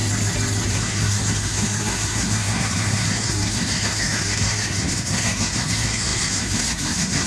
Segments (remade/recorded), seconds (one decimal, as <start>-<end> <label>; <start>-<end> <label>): 0.0-0.7 recorded; 0.7-7.3 remade